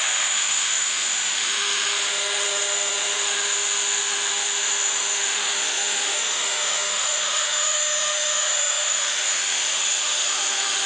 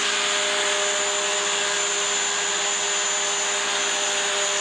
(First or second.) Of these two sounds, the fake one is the first